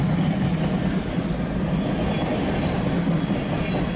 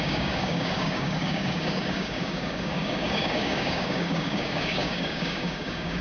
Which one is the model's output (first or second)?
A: second